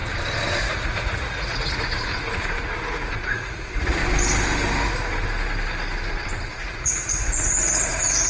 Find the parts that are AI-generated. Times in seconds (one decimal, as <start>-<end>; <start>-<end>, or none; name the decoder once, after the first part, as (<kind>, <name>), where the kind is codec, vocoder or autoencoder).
0.6-2.1 (vocoder, Vocos); 2.6-4.0; 6.4-8.3